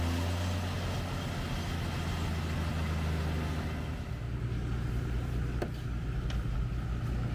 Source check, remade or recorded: recorded